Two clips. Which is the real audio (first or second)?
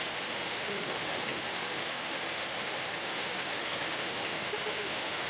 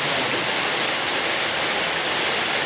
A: second